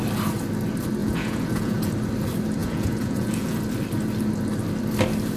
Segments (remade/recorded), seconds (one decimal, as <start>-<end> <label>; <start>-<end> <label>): 0.0-1.0 recorded; 1.0-1.9 remade; 1.9-2.6 recorded; 2.6-3.6 remade; 3.6-5.4 recorded